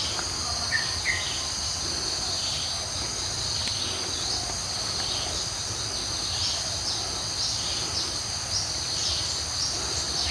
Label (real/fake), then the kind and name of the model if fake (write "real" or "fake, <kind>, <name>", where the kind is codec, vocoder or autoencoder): real